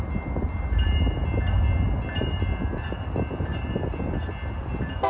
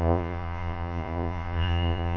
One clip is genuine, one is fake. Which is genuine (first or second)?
first